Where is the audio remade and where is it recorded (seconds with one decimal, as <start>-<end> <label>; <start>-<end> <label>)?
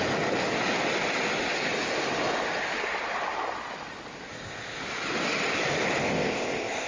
0.0-4.3 recorded; 4.3-4.8 remade; 4.8-6.0 recorded; 6.0-6.9 remade